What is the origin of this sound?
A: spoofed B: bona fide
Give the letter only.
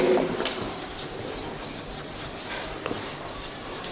B